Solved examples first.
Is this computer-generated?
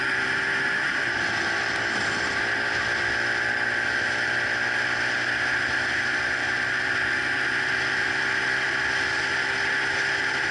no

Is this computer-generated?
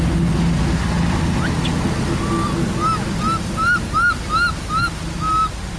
no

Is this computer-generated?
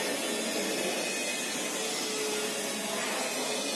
no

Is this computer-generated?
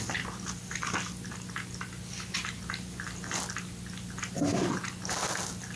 no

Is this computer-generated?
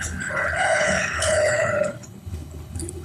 yes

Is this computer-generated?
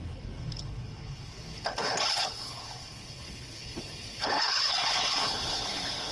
yes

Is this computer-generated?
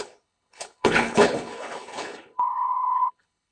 yes